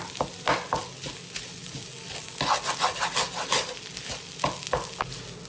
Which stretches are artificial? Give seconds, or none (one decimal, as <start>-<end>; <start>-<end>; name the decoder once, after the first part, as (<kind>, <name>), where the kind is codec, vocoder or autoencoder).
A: none